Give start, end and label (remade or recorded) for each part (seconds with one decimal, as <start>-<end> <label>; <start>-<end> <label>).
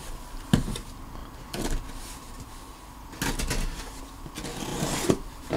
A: 0.0-4.7 recorded; 4.7-5.6 remade